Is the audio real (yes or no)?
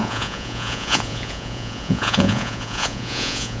no